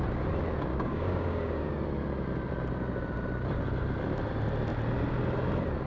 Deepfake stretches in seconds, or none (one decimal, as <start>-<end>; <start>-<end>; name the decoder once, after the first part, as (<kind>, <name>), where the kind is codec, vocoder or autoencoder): 0.7-1.7 (codec, DAC)